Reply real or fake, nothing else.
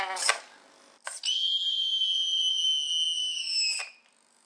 real